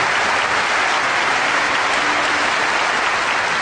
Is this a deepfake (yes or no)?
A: no